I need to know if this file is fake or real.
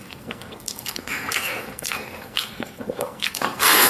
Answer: fake